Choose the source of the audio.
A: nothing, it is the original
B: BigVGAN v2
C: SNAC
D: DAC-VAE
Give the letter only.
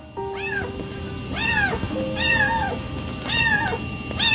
A